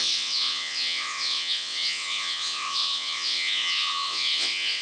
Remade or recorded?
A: remade